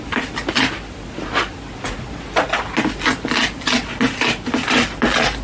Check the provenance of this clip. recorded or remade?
recorded